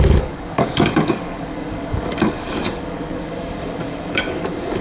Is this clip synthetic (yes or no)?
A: yes